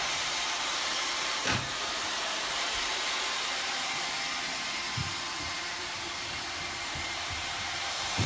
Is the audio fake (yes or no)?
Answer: yes